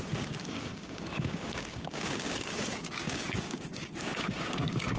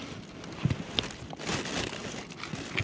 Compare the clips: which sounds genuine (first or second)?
second